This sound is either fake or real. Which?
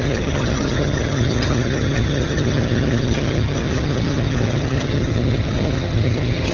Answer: fake